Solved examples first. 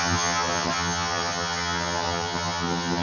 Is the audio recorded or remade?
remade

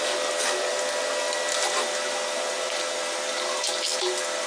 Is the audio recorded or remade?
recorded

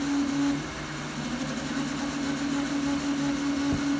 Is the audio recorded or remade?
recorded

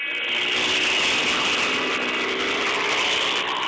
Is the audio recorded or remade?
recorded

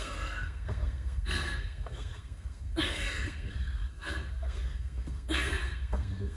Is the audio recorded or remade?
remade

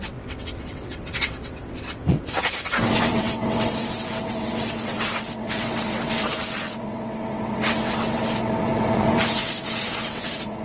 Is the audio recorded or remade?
remade